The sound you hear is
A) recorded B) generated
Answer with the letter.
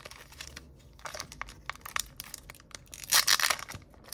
A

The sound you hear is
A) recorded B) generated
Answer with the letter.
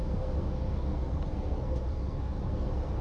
B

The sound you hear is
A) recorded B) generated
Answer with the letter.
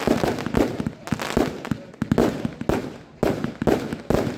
A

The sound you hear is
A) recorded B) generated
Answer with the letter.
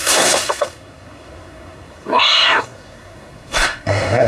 B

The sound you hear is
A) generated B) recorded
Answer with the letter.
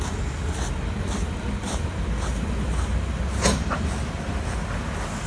B